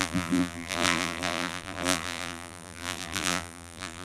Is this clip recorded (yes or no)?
no